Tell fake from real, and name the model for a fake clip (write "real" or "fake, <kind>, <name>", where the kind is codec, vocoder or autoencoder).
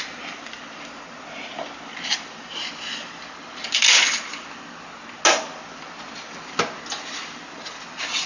real